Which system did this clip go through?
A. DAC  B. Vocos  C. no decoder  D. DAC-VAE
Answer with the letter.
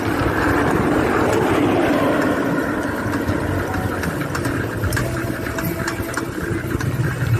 C